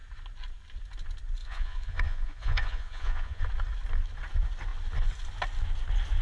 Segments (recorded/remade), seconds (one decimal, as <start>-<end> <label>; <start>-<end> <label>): 0.0-1.4 recorded; 1.4-3.4 remade; 3.4-6.2 recorded